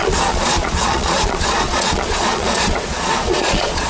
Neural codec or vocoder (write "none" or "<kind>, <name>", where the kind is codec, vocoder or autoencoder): vocoder, Vocos